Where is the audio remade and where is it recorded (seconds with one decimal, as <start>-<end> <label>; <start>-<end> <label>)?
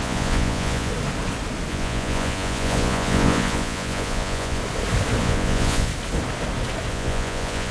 0.0-0.9 remade; 0.9-1.7 recorded; 1.7-4.6 remade; 4.6-5.2 recorded; 5.2-5.9 remade; 5.9-6.9 recorded; 6.9-7.7 remade